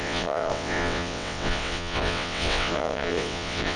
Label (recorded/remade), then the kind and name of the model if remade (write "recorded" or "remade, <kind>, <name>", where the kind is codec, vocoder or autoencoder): remade, vocoder, WaveNeXt